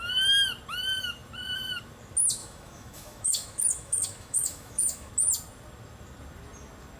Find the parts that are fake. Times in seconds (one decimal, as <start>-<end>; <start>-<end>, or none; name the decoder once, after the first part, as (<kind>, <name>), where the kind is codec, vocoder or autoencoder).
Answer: 2.4-5.1 (autoencoder, DAC-VAE)

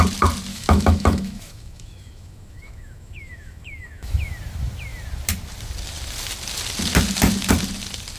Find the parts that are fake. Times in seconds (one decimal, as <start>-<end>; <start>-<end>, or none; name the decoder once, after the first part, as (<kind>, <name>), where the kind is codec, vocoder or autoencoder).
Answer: 0.5-4.3 (autoencoder, DAC-VAE)

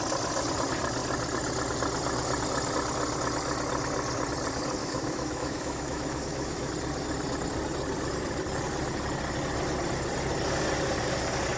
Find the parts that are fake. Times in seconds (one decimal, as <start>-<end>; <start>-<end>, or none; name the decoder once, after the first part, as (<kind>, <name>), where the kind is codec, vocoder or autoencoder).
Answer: 4.8-6.7 (autoencoder, DAC-VAE)

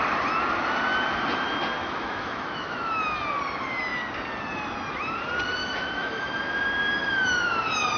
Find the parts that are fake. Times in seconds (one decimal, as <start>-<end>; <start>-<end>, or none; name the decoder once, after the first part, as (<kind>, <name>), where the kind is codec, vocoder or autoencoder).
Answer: 1.8-3.0 (autoencoder, DAC-VAE); 5.6-6.4

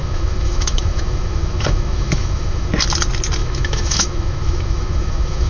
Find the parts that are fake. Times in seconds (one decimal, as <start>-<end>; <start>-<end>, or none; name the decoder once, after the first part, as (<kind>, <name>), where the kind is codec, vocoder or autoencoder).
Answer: 0.0-2.7 (autoencoder, DAC-VAE); 3.4-5.5

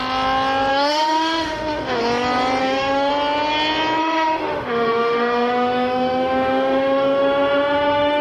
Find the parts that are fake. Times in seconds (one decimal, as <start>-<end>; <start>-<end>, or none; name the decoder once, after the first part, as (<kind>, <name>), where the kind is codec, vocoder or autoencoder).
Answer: 0.7-2.0 (autoencoder, DAC-VAE); 2.6-3.1; 4.0-8.2

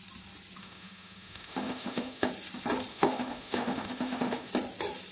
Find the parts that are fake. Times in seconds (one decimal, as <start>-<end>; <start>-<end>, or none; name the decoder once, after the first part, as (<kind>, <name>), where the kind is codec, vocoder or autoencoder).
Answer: 0.6-2.3 (autoencoder, DAC-VAE); 2.9-4.5

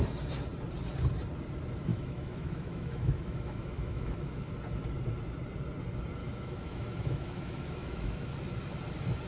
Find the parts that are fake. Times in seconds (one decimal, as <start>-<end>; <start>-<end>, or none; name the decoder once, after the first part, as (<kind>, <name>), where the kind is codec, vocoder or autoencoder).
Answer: 1.9-4.5 (autoencoder, DAC-VAE); 6.2-8.4